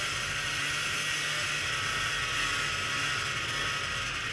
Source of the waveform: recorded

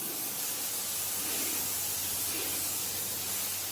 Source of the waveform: recorded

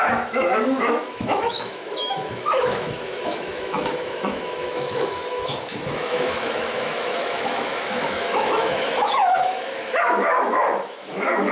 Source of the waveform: remade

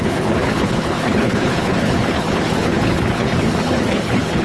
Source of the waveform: remade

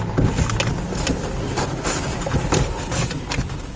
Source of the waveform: recorded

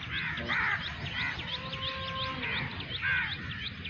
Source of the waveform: recorded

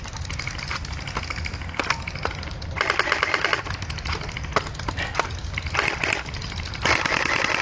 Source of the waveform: recorded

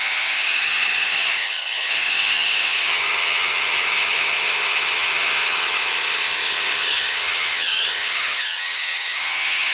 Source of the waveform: remade